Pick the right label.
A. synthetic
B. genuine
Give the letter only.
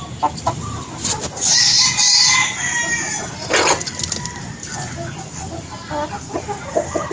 B